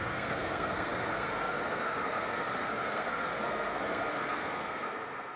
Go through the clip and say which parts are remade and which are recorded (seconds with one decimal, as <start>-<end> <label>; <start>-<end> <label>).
0.0-5.4 remade